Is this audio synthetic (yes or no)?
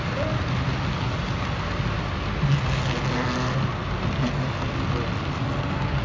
no